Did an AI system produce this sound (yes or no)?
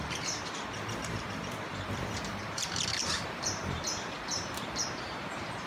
yes